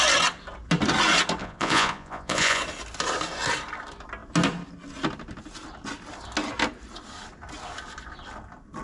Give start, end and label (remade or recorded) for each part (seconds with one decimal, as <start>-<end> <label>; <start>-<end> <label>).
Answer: 0.0-1.4 recorded; 1.4-2.6 remade; 2.6-8.8 recorded